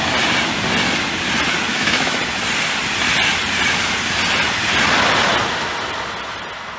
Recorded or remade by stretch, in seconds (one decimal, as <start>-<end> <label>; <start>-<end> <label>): 0.0-1.7 recorded; 1.7-2.2 remade; 2.2-6.8 recorded